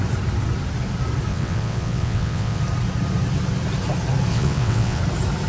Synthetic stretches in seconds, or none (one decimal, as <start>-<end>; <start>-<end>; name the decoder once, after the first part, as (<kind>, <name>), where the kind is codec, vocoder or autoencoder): 1.3-2.6 (vocoder, WaveNeXt); 4.3-5.0